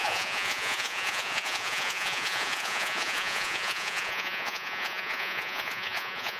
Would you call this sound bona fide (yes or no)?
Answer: no